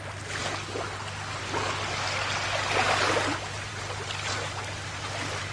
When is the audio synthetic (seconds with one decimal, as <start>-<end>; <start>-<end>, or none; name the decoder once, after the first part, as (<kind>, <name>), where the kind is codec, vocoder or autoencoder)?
none